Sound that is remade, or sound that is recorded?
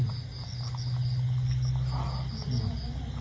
recorded